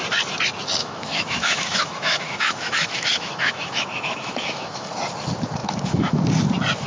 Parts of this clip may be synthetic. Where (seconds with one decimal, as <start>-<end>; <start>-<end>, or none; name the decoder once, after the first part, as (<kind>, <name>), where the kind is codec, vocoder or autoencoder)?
0.8-4.9 (autoencoder, DAC-VAE); 5.6-6.2